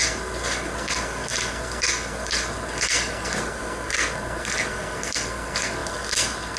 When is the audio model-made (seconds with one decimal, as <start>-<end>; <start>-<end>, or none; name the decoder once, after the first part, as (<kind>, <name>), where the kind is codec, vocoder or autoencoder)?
0.0-6.6 (codec, SNAC)